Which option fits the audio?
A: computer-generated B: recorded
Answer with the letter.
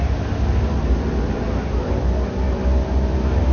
B